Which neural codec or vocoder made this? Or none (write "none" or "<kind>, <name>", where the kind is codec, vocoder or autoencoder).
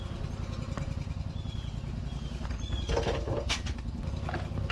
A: none